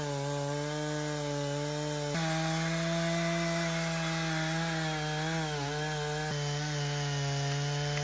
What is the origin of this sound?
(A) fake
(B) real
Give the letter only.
B